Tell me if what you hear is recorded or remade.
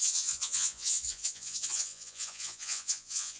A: remade